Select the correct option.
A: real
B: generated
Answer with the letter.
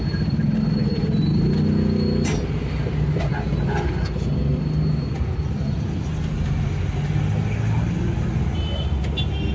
A